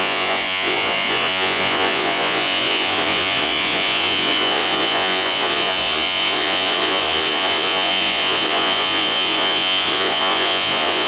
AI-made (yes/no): yes